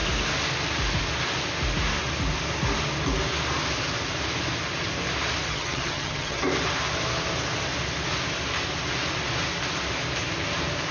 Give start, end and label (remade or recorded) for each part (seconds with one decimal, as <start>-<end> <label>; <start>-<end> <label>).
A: 0.0-5.5 recorded; 5.5-6.4 remade; 6.4-10.9 recorded

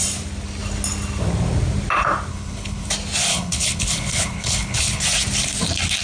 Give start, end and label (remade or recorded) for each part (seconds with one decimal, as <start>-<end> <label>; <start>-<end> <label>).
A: 0.0-2.3 recorded; 2.3-2.9 remade; 2.9-3.3 recorded; 3.3-5.0 remade; 5.0-6.0 recorded

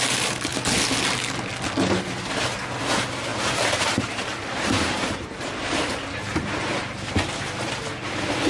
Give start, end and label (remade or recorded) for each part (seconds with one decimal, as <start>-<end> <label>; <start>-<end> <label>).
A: 0.0-3.3 recorded; 3.3-7.7 remade; 7.7-8.5 recorded

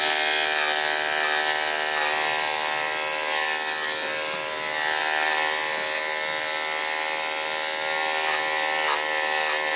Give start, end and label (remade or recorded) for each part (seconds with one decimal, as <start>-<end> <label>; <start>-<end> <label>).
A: 0.0-9.8 recorded

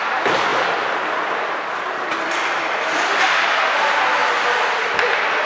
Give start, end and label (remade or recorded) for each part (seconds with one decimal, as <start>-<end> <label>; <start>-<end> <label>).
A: 0.0-5.5 recorded